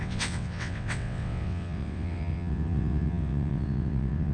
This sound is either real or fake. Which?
fake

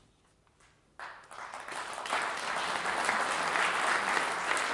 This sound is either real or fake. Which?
real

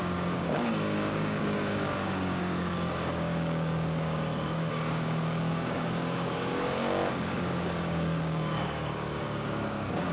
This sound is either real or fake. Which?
fake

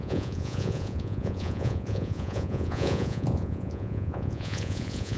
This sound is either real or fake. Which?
fake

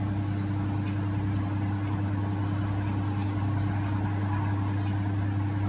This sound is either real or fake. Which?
real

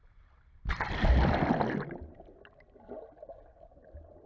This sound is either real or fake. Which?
real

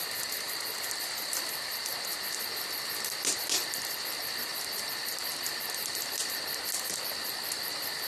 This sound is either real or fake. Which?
real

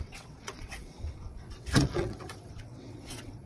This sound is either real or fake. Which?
fake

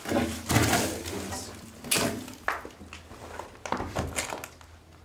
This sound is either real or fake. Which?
real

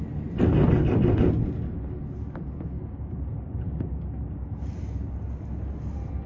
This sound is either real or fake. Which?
real